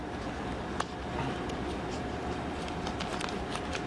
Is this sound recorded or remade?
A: recorded